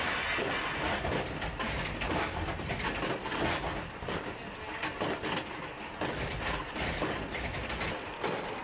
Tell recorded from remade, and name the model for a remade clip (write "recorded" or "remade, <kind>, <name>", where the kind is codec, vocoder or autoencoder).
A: recorded